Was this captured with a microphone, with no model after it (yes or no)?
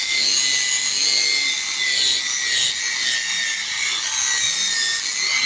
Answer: yes